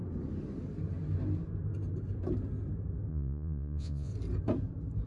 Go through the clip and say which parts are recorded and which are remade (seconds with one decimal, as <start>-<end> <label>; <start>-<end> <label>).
0.0-3.1 recorded; 3.1-4.1 remade; 4.1-5.1 recorded